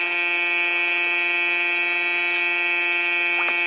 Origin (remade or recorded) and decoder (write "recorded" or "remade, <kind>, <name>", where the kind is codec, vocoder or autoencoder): recorded